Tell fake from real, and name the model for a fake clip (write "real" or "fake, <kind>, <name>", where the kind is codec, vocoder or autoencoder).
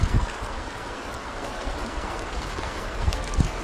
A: fake, codec, SNAC